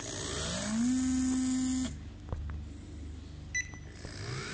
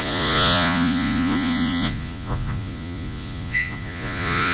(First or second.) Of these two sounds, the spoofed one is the second